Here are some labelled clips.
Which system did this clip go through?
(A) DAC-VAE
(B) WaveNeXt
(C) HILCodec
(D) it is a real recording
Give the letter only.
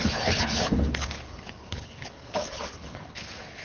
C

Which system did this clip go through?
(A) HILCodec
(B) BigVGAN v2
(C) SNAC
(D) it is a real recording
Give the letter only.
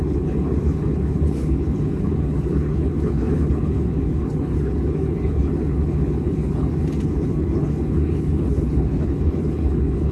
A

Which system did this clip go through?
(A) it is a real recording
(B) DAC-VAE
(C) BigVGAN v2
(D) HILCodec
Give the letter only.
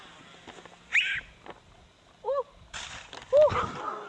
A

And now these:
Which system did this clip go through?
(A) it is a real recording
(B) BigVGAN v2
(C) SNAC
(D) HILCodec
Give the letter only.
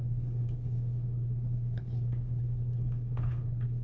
D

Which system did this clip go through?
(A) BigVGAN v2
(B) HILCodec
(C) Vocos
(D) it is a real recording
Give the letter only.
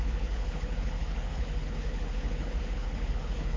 B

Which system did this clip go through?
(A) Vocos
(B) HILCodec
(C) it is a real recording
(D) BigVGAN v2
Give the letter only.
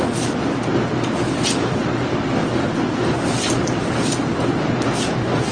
C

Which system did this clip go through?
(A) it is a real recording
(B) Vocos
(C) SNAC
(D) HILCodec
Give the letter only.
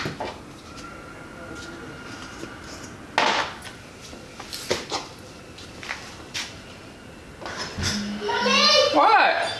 A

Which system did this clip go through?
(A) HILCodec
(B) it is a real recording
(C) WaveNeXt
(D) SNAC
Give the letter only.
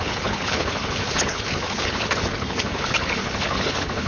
A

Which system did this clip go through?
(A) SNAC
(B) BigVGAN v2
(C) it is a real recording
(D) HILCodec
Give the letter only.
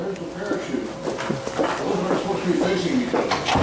C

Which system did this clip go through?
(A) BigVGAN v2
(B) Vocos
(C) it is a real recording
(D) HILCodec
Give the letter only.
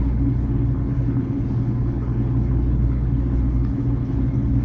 D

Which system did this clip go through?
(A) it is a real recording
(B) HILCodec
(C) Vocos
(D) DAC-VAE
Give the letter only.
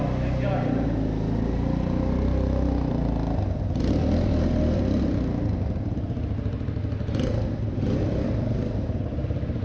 A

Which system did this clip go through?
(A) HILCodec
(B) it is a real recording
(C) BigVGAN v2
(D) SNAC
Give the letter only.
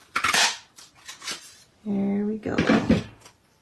B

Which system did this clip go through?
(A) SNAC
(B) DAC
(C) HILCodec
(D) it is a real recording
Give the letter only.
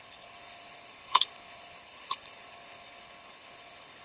C